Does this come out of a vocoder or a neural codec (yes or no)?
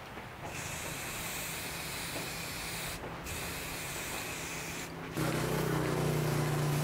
no